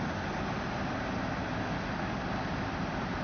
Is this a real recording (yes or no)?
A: yes